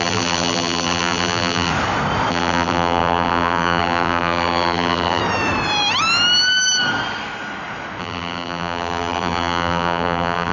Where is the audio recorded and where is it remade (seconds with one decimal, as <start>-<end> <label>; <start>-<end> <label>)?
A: 0.0-1.7 remade; 1.7-2.3 recorded; 2.3-5.2 remade; 5.2-8.0 recorded; 8.0-10.5 remade